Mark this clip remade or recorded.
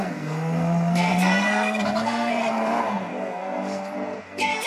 remade